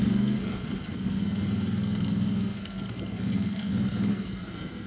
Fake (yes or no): yes